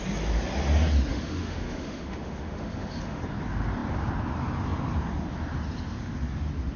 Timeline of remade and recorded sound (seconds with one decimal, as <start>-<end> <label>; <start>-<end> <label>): 0.0-1.1 recorded; 1.1-3.2 remade; 3.2-6.8 recorded

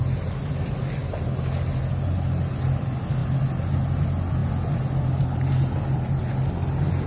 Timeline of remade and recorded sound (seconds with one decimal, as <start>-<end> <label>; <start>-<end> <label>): 0.0-7.1 recorded

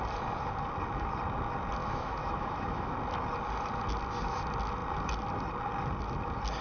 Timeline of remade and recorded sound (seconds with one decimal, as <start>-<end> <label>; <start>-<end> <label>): 0.0-1.8 recorded; 1.8-2.9 remade; 2.9-6.6 recorded

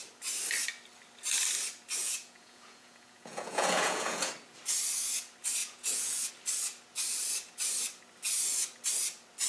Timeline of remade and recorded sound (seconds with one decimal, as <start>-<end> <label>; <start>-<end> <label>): 0.0-2.0 recorded; 2.0-4.3 remade; 4.3-5.6 recorded; 5.6-6.3 remade; 6.3-9.5 recorded

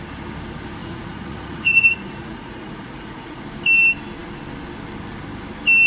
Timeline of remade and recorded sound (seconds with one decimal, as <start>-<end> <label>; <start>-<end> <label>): 0.0-0.8 recorded; 0.8-3.4 remade; 3.4-5.9 recorded

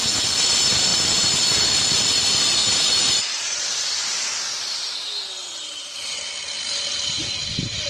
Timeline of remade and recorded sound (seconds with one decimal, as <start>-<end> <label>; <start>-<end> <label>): 0.0-0.9 recorded; 0.9-2.2 remade; 2.2-2.6 recorded; 2.6-4.2 remade; 4.2-5.4 recorded; 5.4-6.2 remade; 6.2-7.9 recorded